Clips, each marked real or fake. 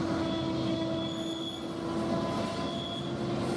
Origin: real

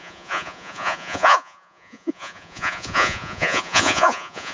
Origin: fake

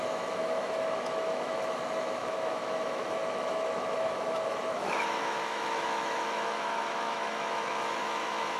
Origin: fake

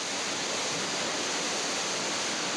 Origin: fake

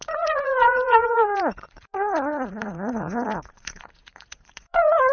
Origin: fake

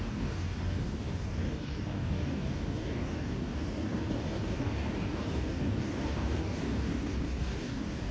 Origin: fake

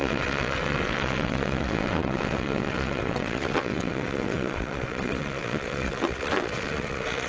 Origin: fake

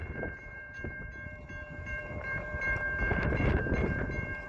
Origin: fake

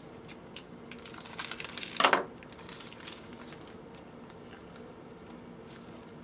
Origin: real